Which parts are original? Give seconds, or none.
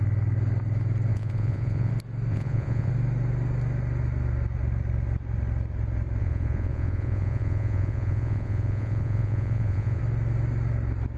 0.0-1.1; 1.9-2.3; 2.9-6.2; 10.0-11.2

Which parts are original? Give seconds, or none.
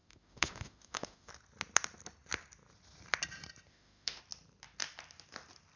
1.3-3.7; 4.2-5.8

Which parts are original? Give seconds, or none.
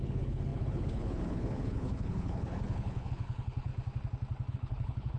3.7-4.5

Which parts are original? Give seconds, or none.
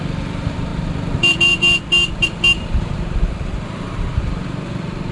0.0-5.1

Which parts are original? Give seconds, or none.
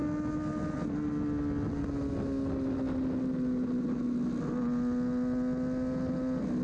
0.0-6.6